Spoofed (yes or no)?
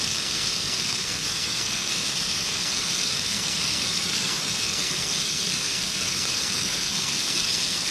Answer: yes